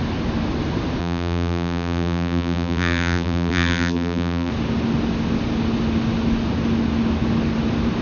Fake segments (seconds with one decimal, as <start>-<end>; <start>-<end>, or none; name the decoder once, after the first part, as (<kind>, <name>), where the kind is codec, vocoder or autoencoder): 1.0-4.5 (vocoder, BigVGAN v2)